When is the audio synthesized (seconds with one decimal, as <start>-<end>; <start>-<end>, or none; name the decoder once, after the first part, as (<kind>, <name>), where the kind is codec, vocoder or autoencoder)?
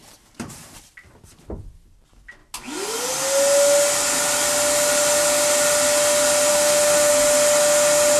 6.5-7.1 (autoencoder, DAC-VAE)